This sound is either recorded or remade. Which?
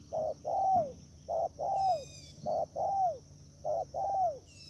recorded